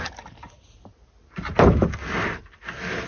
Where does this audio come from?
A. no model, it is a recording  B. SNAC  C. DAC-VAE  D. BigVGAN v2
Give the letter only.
A